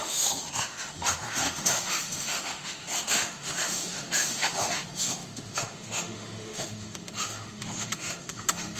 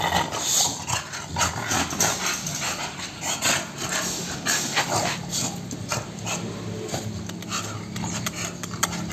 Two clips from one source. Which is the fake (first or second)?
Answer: first